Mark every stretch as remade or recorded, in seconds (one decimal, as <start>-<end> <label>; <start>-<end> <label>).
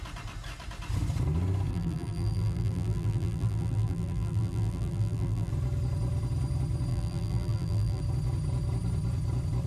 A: 0.0-1.7 recorded; 1.7-5.5 remade; 5.5-6.9 recorded; 6.9-8.0 remade; 8.0-9.7 recorded